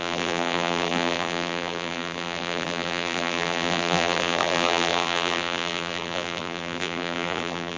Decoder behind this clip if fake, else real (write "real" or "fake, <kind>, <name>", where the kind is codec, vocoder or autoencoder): fake, vocoder, BigVGAN v2